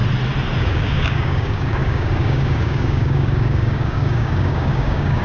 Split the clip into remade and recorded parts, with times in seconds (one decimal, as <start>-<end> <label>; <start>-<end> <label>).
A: 0.0-0.6 recorded; 0.6-5.2 remade

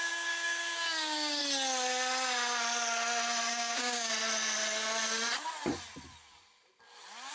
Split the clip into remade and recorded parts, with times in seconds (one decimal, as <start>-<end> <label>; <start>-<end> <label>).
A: 0.0-1.4 remade; 1.4-3.5 recorded; 3.5-4.1 remade; 4.1-7.3 recorded

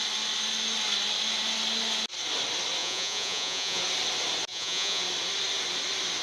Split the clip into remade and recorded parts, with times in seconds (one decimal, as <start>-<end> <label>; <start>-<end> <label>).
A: 0.0-2.8 recorded; 2.8-3.8 remade; 3.8-4.5 recorded; 4.5-5.0 remade; 5.0-6.2 recorded

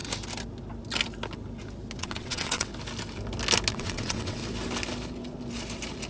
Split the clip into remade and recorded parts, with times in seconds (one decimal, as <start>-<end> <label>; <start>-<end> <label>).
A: 0.0-2.0 recorded; 2.0-2.7 remade; 2.7-3.7 recorded; 3.7-4.4 remade; 4.4-6.1 recorded

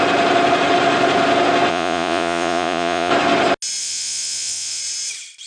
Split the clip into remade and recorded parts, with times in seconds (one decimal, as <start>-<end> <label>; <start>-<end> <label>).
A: 0.0-1.7 recorded; 1.7-3.1 remade; 3.1-3.8 recorded; 3.8-4.8 remade; 4.8-5.5 recorded

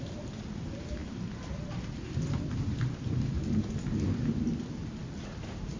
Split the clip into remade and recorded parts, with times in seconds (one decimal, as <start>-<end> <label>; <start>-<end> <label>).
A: 0.0-1.0 recorded; 1.0-4.5 remade; 4.5-5.0 recorded; 5.0-5.8 remade

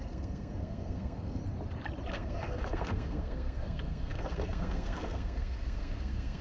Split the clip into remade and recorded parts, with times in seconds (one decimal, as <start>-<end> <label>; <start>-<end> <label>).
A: 0.0-1.4 remade; 1.4-2.1 recorded; 2.1-6.4 remade

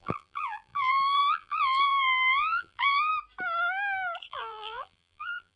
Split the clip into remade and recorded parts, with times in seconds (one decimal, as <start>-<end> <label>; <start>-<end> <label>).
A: 0.0-3.1 remade; 3.1-4.3 recorded; 4.3-5.6 remade